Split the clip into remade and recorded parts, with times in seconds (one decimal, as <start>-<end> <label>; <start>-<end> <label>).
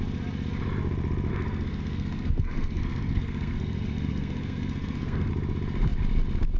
0.0-1.3 recorded; 1.3-5.3 remade; 5.3-6.6 recorded